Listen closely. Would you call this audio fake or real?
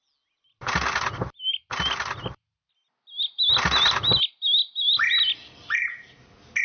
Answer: real